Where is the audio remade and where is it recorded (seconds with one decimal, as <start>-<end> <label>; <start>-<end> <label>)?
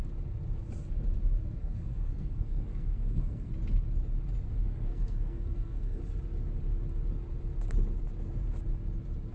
0.0-1.6 recorded; 1.6-3.5 remade; 3.5-4.5 recorded; 4.5-6.0 remade; 6.0-9.3 recorded